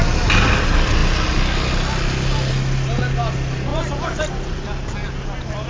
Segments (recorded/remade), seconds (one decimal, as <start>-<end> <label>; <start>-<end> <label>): 0.0-5.7 recorded